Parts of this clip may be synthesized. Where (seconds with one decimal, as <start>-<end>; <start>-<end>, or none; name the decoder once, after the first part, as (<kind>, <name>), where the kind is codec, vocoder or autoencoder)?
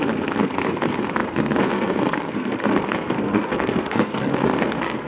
0.0-5.1 (codec, SNAC)